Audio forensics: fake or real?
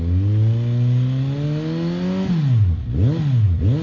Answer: real